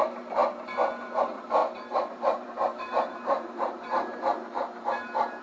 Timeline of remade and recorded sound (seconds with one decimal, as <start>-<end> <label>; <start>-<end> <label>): 0.0-0.4 remade; 0.4-1.2 recorded; 1.2-1.6 remade; 1.6-2.1 recorded; 2.1-5.4 remade